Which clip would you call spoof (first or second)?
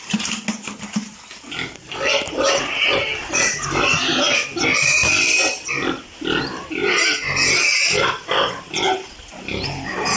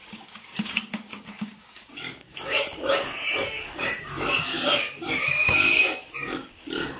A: second